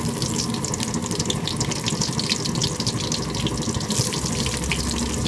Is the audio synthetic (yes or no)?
no